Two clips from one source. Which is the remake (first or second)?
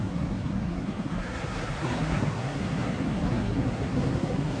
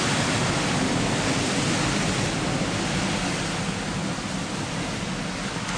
first